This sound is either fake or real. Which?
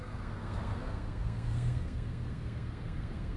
fake